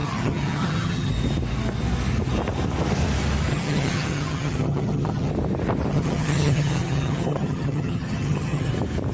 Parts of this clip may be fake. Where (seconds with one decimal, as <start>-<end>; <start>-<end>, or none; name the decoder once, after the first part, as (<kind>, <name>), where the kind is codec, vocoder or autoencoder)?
0.0-1.1 (vocoder, HiFi-GAN); 3.5-5.3; 5.9-8.7